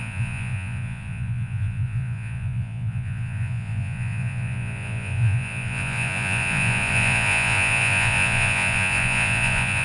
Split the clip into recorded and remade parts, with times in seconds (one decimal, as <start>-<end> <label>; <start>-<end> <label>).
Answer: 0.0-9.8 remade